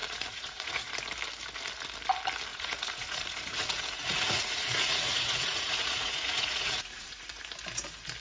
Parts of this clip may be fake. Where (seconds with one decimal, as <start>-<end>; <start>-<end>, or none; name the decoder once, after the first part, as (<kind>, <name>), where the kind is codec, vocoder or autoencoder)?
0.0-0.9 (vocoder, Vocos); 2.5-7.4